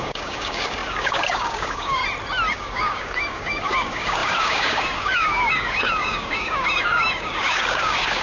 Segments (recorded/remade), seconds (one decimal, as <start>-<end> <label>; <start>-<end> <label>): 0.0-2.0 remade; 2.0-2.5 recorded; 2.5-8.2 remade